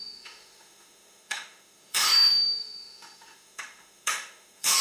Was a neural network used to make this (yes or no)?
yes